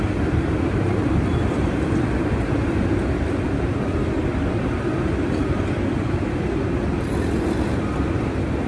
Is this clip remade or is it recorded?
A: remade